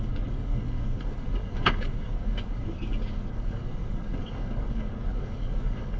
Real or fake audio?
fake